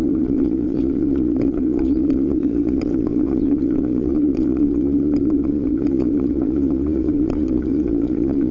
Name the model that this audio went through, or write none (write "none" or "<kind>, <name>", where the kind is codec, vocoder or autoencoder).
vocoder, Vocos